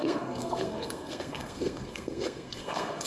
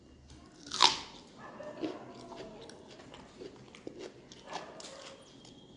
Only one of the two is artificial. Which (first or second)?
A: first